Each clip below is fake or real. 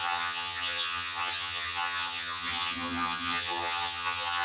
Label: fake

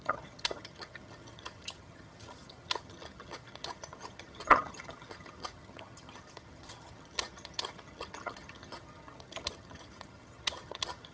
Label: fake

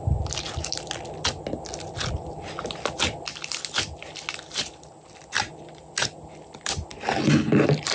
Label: real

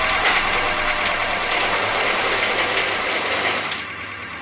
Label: real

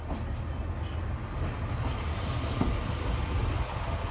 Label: real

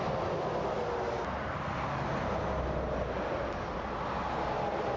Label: real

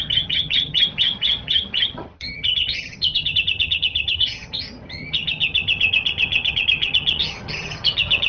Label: fake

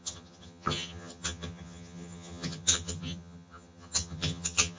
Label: fake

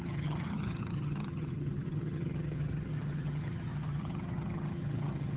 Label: fake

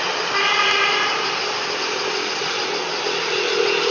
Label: real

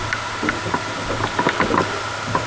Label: real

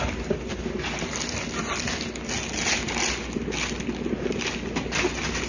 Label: real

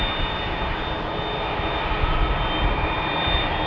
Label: real